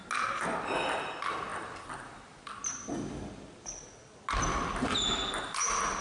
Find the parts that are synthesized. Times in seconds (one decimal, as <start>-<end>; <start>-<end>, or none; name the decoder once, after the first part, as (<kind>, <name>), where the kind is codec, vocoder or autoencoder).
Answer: none

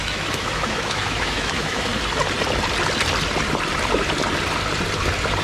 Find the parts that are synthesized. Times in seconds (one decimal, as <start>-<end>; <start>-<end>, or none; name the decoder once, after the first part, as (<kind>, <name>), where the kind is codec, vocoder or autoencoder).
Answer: 0.0-1.9 (autoencoder, DAC-VAE)